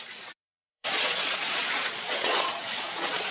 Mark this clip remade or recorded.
remade